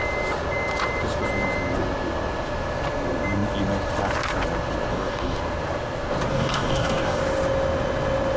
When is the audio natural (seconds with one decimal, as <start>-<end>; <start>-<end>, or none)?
0.0-4.9; 5.4-6.3; 7.2-8.4